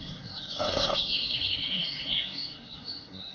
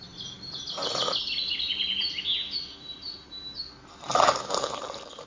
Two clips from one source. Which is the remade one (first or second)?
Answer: first